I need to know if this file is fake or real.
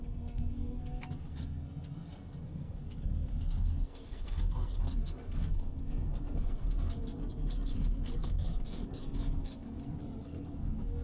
fake